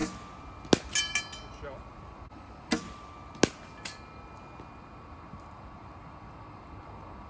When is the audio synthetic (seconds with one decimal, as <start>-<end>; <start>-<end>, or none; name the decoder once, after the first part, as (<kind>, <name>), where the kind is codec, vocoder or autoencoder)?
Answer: none